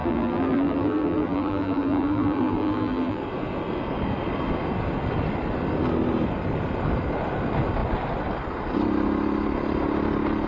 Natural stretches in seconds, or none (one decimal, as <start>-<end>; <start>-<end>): 3.2-10.5